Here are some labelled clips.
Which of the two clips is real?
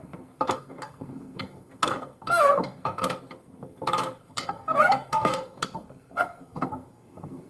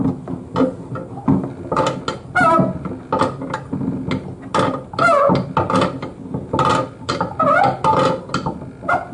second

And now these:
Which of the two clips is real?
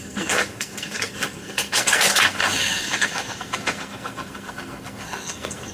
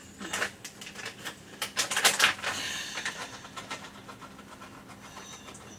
second